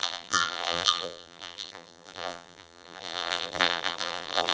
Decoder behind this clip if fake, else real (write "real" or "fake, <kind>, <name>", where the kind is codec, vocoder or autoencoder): fake, vocoder, BigVGAN v2